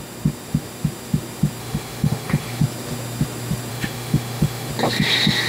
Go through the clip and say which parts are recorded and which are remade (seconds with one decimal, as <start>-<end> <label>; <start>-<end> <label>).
0.0-1.6 recorded; 1.6-2.6 remade; 2.6-3.7 recorded; 3.7-4.7 remade; 4.7-5.5 recorded